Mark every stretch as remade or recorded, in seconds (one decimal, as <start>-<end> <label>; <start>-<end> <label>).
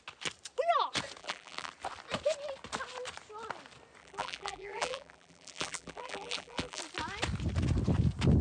0.0-1.2 recorded; 1.2-1.7 remade; 1.7-4.0 recorded; 4.0-6.8 remade; 6.8-8.4 recorded